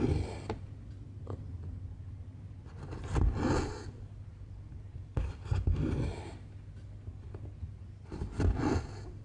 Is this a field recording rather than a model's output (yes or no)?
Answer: yes